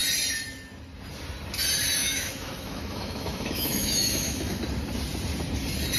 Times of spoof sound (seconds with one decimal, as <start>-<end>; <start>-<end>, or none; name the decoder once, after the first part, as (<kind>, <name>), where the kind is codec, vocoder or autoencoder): 2.0-4.6 (autoencoder, DAC-VAE)